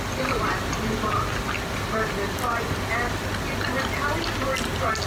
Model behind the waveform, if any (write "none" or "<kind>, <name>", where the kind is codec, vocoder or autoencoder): none